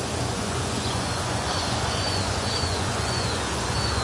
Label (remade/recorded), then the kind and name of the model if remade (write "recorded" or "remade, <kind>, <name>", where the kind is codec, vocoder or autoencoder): remade, vocoder, Vocos